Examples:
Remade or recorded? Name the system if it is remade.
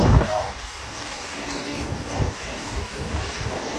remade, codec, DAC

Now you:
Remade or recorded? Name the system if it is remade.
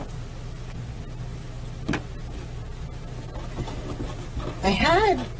recorded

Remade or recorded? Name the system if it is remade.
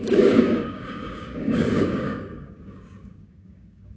remade, codec, DAC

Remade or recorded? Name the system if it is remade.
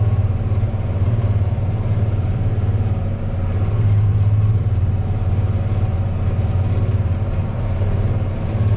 remade, vocoder, BigVGAN v2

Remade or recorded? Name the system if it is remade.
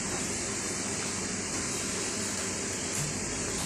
recorded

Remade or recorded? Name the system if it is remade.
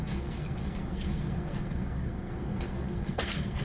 remade, codec, SNAC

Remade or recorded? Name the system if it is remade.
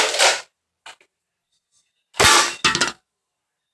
recorded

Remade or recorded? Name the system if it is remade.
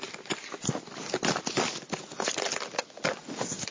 recorded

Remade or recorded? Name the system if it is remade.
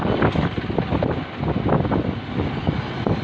remade, vocoder, BigVGAN v2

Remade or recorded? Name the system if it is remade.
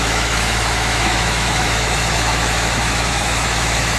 remade, autoencoder, DAC-VAE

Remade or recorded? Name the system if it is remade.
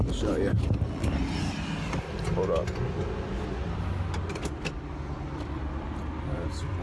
recorded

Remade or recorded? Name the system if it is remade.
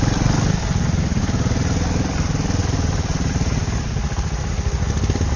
recorded